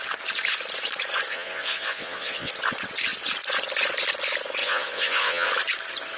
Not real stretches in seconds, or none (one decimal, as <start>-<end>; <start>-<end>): 1.3-2.5; 4.6-5.5